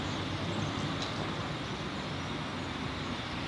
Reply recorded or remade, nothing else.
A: recorded